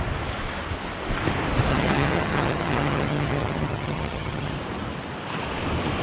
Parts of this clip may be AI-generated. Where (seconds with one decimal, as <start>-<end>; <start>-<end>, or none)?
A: 1.7-4.5